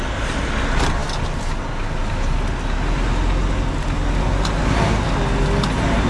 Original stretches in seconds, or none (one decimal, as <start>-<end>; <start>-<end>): 0.0-6.1